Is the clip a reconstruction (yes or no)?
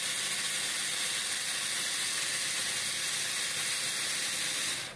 no